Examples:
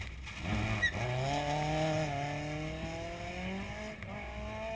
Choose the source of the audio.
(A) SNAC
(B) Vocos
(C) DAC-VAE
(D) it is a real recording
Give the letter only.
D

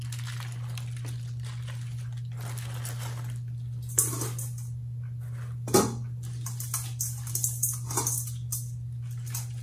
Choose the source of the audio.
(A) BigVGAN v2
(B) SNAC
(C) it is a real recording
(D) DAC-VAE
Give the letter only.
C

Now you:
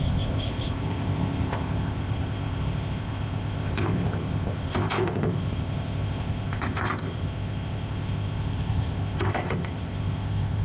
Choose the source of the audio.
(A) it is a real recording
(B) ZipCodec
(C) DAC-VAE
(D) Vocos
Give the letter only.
B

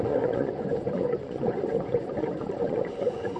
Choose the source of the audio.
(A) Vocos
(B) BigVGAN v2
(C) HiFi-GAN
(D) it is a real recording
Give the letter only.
A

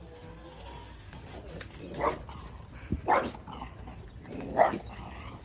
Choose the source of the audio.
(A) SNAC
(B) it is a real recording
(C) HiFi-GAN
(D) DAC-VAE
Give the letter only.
B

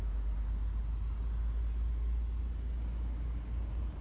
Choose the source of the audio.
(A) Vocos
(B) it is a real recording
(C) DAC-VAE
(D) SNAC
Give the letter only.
B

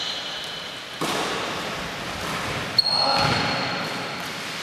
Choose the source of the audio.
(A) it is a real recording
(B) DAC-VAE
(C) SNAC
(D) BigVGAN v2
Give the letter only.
A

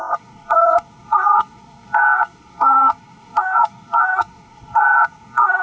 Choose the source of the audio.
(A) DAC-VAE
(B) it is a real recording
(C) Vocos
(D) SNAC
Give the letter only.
D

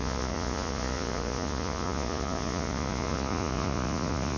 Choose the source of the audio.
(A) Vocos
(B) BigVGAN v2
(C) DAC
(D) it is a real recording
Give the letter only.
A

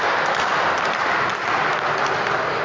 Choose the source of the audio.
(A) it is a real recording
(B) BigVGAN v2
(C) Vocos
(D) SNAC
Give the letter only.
A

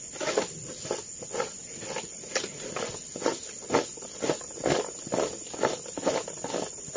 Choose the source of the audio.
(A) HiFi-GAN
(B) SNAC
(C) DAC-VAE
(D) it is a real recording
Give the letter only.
D